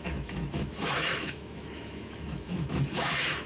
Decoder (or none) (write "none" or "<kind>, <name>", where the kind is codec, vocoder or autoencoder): autoencoder, DAC-VAE